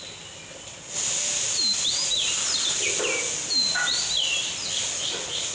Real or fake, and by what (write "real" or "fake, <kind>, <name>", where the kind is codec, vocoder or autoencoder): real